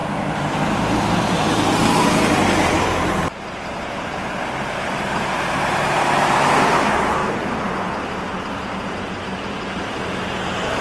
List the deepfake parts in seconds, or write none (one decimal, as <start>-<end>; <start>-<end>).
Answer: 0.0-10.8